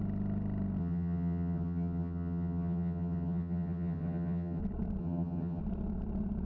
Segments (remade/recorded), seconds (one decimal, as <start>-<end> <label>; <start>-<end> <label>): 0.0-0.8 recorded; 0.8-4.6 remade; 4.6-5.0 recorded; 5.0-5.6 remade; 5.6-6.4 recorded